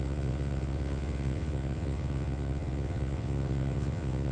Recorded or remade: remade